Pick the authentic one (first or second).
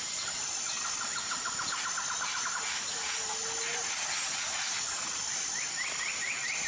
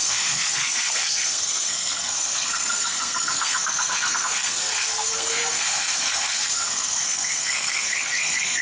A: first